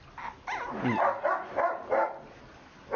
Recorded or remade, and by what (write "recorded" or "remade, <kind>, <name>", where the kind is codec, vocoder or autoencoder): recorded